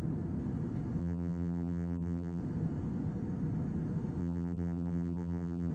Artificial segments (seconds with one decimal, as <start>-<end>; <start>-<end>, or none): 1.0-2.4; 4.2-5.7